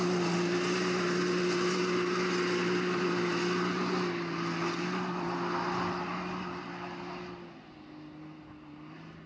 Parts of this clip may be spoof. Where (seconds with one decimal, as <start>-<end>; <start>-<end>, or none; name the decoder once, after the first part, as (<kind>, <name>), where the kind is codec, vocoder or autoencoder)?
none